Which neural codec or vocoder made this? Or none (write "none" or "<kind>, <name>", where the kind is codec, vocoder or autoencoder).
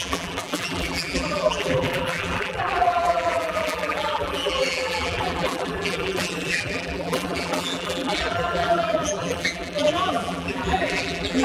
vocoder, BigVGAN v2